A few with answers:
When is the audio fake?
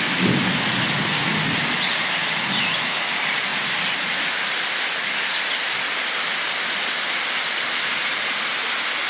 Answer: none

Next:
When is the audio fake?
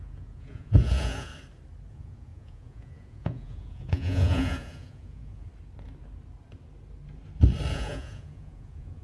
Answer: 0.0-1.3; 1.9-5.5; 7.7-9.0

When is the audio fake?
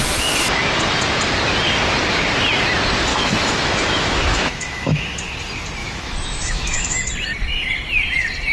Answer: 3.1-5.3; 5.8-7.1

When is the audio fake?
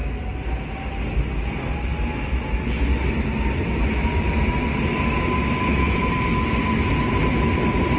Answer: none